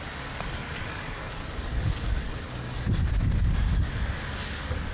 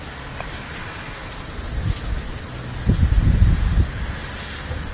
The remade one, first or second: first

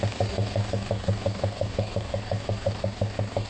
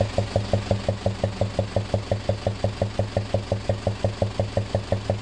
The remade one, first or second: first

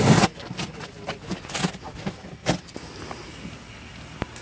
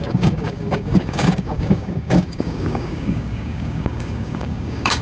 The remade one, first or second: second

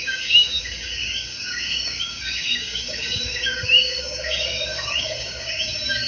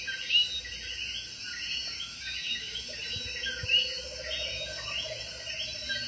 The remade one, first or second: first